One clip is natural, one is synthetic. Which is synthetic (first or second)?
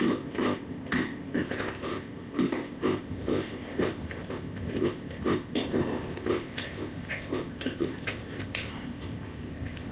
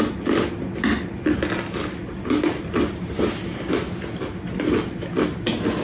first